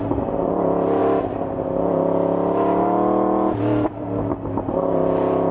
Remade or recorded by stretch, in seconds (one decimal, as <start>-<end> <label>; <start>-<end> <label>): 0.0-5.5 recorded

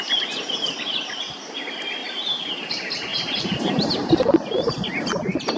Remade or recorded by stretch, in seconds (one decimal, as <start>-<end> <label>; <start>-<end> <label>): 0.0-2.0 recorded; 2.0-2.5 remade; 2.5-3.1 recorded; 3.1-3.9 remade; 3.9-5.6 recorded

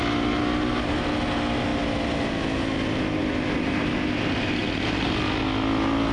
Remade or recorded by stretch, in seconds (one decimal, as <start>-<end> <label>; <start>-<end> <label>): 0.0-3.2 recorded; 3.2-3.9 remade; 3.9-4.6 recorded; 4.6-5.4 remade; 5.4-6.1 recorded

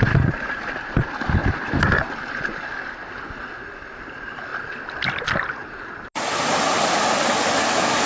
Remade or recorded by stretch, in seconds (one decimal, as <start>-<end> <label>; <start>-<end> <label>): 0.0-8.1 recorded

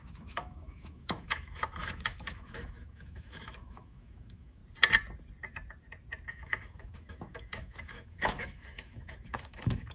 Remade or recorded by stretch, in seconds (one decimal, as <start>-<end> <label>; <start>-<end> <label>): 0.0-4.6 remade; 4.6-6.3 recorded; 6.3-9.9 remade

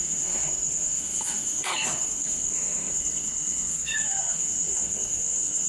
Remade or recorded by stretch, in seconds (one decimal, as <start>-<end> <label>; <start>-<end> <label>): 0.0-5.7 remade

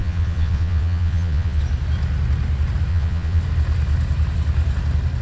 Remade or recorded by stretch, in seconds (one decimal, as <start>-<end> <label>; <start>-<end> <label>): 0.0-1.6 remade; 1.6-2.9 recorded; 2.9-3.4 remade; 3.4-5.2 recorded